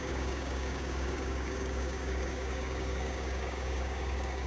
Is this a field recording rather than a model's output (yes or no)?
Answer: no